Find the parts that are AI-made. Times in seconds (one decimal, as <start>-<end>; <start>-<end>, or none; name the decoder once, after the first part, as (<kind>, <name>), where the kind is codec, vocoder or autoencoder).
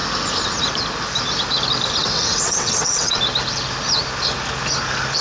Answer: 2.0-3.2 (vocoder, WaveNeXt)